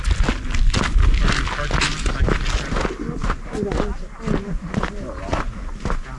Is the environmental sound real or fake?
real